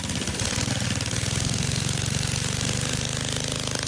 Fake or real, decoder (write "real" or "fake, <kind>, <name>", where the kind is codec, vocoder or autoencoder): real